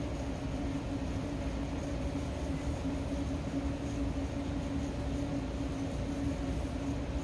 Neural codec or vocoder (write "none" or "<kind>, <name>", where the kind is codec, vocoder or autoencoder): none